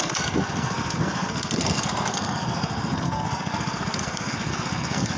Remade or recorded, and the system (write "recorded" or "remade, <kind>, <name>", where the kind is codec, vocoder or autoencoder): remade, codec, SNAC